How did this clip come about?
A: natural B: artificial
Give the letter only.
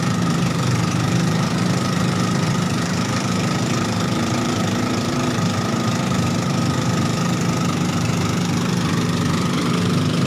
B